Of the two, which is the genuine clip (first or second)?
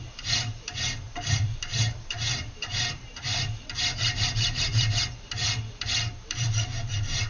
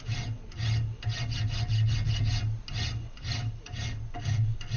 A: second